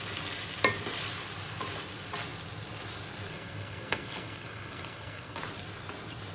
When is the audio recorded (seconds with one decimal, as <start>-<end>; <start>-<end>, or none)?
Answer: 0.0-3.3; 5.4-6.3